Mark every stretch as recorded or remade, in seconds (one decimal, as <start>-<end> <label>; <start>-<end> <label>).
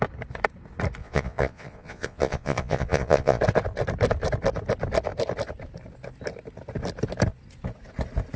0.0-1.0 recorded; 1.0-3.4 remade; 3.4-8.4 recorded